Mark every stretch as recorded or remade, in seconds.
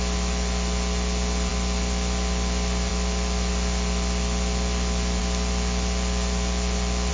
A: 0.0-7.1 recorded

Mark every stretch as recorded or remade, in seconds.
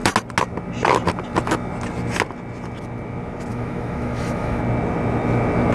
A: 0.0-3.5 recorded; 3.5-4.6 remade; 4.6-5.7 recorded